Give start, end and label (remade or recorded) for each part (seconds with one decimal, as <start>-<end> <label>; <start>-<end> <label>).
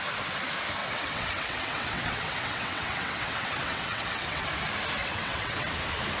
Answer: 0.0-0.8 recorded; 0.8-4.5 remade; 4.5-5.0 recorded; 5.0-5.7 remade; 5.7-6.2 recorded